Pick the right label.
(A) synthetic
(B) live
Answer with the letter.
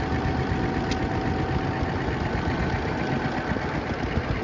B